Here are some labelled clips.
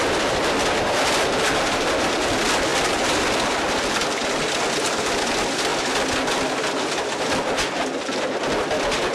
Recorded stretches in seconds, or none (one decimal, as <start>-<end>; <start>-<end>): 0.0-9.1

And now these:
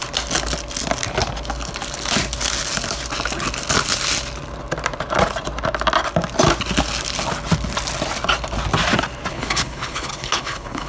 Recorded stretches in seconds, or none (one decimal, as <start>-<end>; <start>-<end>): 0.0-9.3

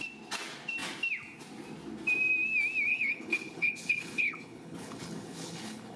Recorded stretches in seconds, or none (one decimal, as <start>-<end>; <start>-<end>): 0.0-2.9

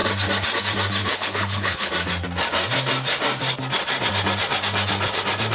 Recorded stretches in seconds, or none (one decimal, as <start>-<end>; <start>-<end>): 0.0-1.0; 1.9-5.5